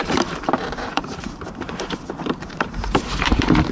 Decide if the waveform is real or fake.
fake